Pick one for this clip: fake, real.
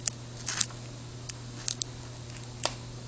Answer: real